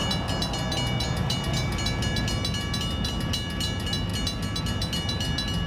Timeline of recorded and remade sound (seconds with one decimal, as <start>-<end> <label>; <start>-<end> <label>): 0.0-5.7 recorded